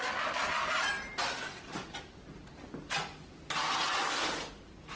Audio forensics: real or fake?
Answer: real